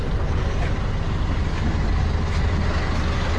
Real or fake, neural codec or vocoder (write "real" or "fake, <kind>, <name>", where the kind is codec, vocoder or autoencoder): real